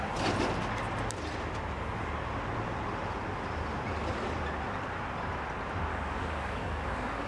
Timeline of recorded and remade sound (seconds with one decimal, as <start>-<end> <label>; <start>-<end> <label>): 0.0-5.9 recorded; 5.9-7.3 remade